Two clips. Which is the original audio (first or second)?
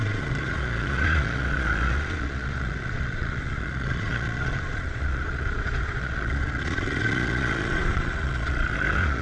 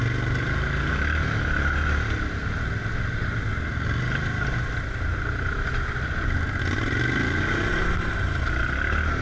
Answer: second